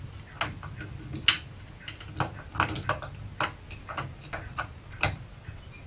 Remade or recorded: recorded